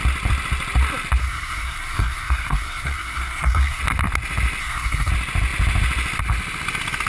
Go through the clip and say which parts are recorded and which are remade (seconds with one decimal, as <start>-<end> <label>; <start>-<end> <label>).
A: 0.0-1.2 recorded; 1.2-3.8 remade; 3.8-4.6 recorded; 4.6-5.1 remade; 5.1-7.1 recorded